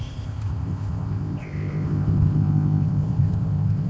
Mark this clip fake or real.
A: fake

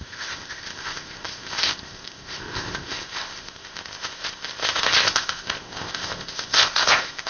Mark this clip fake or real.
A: fake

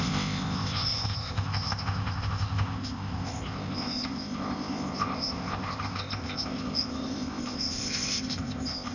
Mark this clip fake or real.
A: fake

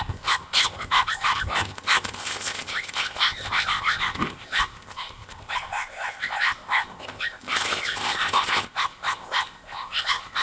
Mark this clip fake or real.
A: fake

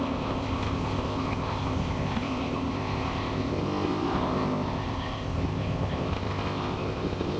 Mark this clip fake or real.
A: fake